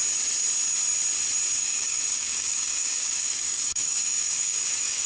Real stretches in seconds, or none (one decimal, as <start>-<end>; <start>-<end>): 0.0-1.6